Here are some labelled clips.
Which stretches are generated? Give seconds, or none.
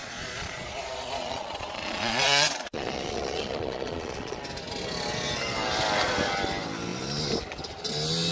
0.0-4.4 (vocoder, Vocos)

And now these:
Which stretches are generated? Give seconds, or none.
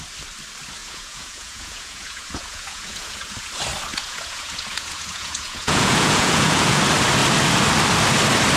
0.8-3.5 (vocoder, Vocos); 3.9-6.8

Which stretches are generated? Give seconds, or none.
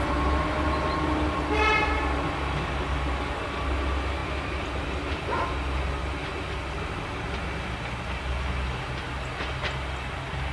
none